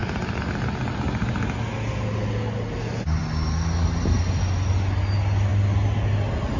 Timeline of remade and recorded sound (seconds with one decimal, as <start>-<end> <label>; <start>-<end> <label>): 0.0-6.6 recorded